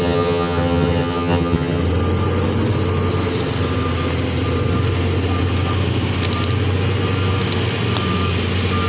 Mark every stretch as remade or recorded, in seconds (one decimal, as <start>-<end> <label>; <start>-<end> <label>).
0.0-1.8 remade; 1.8-8.9 recorded